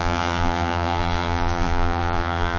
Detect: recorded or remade remade